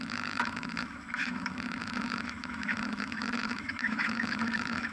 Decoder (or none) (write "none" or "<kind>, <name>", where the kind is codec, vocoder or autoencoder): autoencoder, DAC-VAE